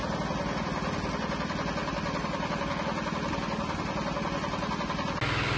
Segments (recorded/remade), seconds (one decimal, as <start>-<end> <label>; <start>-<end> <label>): 0.0-5.6 recorded